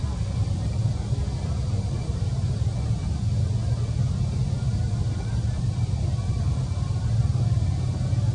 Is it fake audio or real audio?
real